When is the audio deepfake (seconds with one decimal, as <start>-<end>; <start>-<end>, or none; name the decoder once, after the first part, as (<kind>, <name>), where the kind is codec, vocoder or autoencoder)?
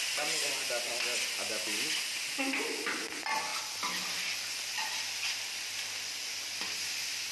3.5-4.6 (vocoder, BigVGAN v2)